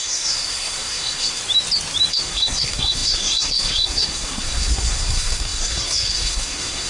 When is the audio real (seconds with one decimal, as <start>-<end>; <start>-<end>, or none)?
1.4-2.1